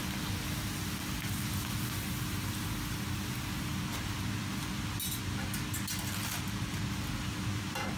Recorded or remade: recorded